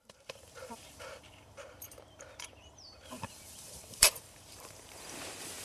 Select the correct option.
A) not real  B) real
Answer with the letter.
A